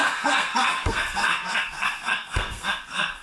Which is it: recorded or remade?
remade